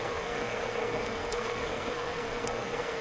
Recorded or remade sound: remade